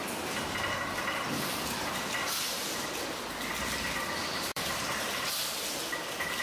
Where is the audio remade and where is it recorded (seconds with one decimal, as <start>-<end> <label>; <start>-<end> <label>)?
0.0-4.2 recorded; 4.2-5.3 remade; 5.3-6.4 recorded